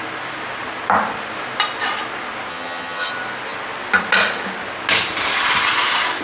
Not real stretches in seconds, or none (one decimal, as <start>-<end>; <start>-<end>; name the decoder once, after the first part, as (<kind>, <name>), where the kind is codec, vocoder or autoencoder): 2.5-3.1 (vocoder, HiFi-GAN)